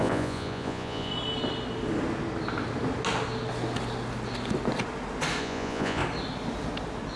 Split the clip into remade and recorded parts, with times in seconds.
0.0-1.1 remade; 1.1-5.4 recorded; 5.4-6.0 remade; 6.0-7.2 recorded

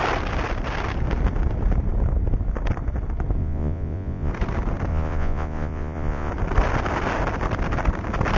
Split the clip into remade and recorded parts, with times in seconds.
0.0-3.4 recorded; 3.4-4.3 remade; 4.3-4.9 recorded; 4.9-6.3 remade; 6.3-8.4 recorded

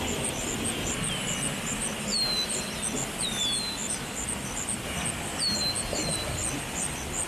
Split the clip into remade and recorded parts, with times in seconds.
0.0-7.3 recorded

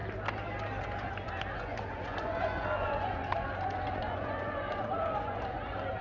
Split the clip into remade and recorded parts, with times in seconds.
0.0-0.8 recorded; 0.8-6.0 remade

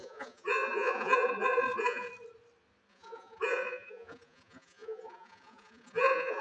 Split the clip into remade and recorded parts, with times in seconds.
0.0-2.1 remade; 2.1-2.9 recorded; 2.9-6.4 remade